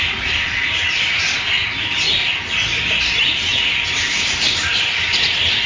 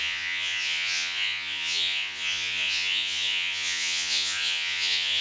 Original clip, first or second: first